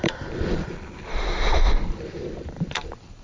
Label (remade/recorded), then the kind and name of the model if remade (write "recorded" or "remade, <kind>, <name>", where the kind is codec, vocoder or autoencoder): remade, vocoder, BigVGAN v2